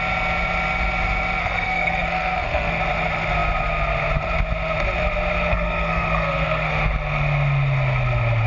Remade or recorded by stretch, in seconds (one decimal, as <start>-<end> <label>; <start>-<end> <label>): 0.0-1.4 recorded; 1.4-2.7 remade; 2.7-5.5 recorded; 5.5-6.7 remade; 6.7-8.5 recorded